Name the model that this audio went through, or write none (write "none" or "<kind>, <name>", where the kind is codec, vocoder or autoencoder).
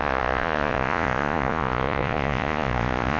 vocoder, Vocos